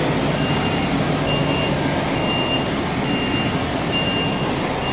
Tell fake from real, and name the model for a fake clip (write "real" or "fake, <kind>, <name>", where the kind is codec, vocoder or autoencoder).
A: real